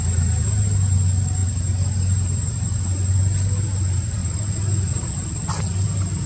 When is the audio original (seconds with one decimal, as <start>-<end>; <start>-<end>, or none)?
0.0-1.4; 3.1-4.2; 5.1-6.3